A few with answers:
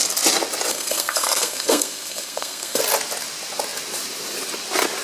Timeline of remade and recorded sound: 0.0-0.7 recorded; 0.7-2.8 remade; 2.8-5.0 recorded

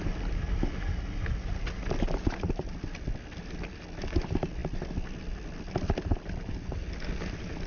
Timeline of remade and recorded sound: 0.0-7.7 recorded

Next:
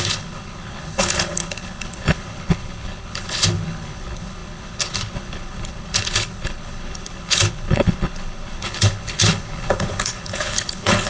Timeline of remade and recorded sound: 0.0-11.1 remade